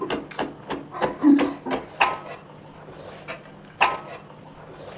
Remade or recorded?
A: recorded